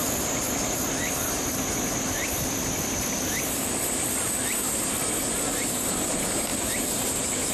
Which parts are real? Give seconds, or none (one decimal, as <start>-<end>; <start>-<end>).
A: 0.0-1.0; 4.4-6.5; 7.1-7.5